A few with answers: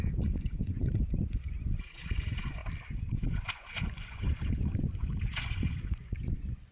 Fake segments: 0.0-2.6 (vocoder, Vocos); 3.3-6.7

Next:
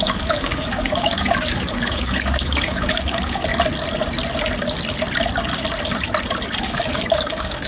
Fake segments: 0.0-3.5 (codec, DAC); 6.6-7.7

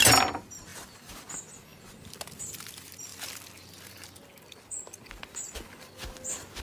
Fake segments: 0.7-1.2 (vocoder, BigVGAN v2)

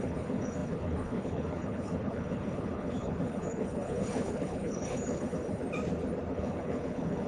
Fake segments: 0.0-5.6 (codec, HILCodec); 6.3-7.3

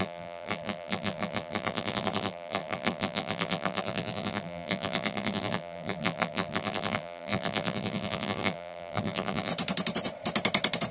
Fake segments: 0.0-9.5 (vocoder, BigVGAN v2)

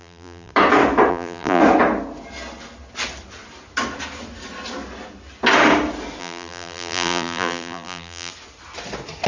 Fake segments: 0.0-0.5 (vocoder, BigVGAN v2); 1.1-1.6; 6.2-8.3

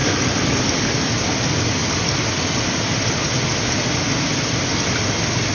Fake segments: none